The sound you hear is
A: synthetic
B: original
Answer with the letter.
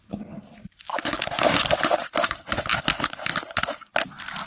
B